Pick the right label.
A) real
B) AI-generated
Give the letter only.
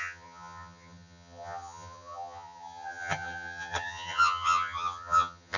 B